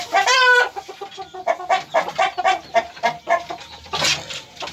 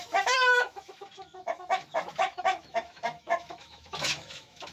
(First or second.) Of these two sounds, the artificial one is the second